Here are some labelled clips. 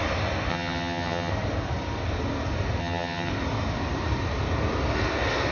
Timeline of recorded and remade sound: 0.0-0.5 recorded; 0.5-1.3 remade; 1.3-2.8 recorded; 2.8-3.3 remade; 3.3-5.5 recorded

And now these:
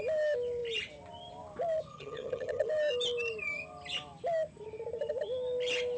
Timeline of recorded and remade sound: 0.0-1.9 recorded; 1.9-2.7 remade; 2.7-6.0 recorded

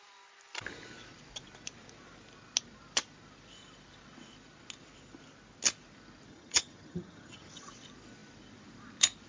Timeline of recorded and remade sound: 0.0-6.3 recorded; 6.3-7.7 remade; 7.7-9.3 recorded

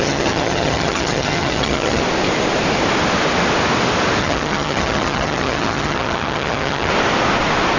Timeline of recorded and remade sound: 0.0-2.0 remade; 2.0-4.2 recorded; 4.2-6.9 remade; 6.9-7.8 recorded

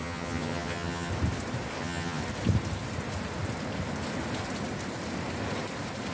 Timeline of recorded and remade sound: 0.0-1.1 remade; 1.1-1.8 recorded; 1.8-2.2 remade; 2.2-6.1 recorded

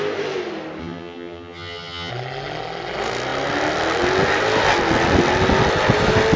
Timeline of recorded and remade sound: 0.0-0.8 recorded; 0.8-2.1 remade; 2.1-6.4 recorded

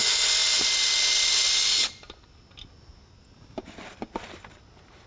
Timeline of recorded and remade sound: 0.0-5.1 recorded